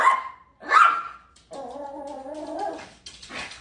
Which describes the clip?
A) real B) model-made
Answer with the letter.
A